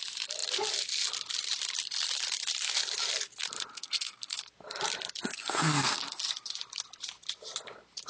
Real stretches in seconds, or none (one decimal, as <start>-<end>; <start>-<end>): 0.0-3.7; 4.4-5.3; 6.6-8.1